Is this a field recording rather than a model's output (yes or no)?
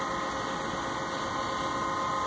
yes